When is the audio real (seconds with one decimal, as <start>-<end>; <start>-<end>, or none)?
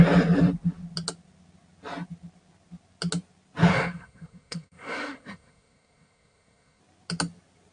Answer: 0.0-3.7; 6.8-7.7